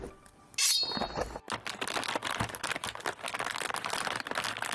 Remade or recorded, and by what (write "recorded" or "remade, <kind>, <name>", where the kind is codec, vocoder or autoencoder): recorded